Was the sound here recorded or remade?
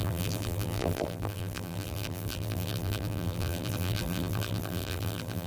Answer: remade